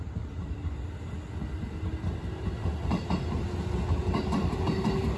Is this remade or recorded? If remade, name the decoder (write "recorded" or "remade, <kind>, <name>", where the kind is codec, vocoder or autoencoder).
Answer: recorded